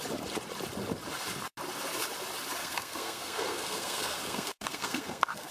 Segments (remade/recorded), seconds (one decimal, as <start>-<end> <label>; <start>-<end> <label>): 0.0-2.6 recorded; 2.6-5.5 remade